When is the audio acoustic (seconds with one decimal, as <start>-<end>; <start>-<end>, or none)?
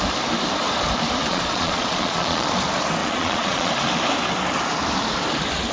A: 0.0-1.3; 2.5-3.0; 3.7-5.7